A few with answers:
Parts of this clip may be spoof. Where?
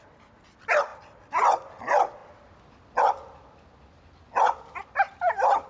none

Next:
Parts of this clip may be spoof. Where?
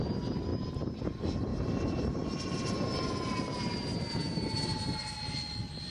0.5-1.0 (vocoder, BigVGAN v2); 1.5-5.0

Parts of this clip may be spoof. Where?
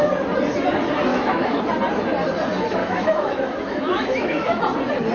1.1-1.6 (autoencoder, DAC-VAE); 2.8-4.6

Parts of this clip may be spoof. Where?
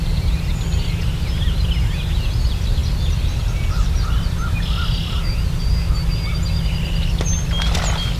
none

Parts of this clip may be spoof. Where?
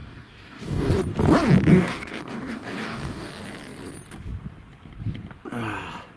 0.0-0.9 (codec, DAC); 1.7-3.3